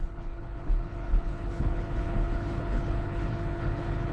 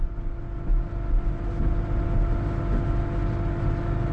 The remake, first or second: first